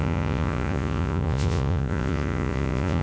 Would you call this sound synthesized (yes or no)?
yes